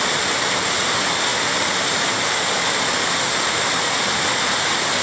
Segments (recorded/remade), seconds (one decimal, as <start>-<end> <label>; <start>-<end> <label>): 0.0-5.0 recorded